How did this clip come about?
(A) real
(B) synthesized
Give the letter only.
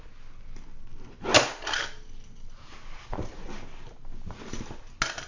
A